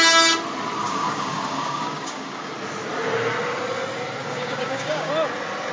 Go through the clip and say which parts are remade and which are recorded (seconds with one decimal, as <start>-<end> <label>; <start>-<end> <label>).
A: 0.0-0.8 recorded; 0.8-2.5 remade; 2.5-4.2 recorded; 4.2-5.1 remade; 5.1-5.7 recorded